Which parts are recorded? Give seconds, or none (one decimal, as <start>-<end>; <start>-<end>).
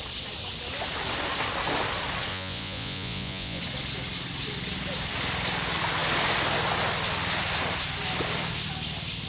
0.0-2.3; 3.6-9.3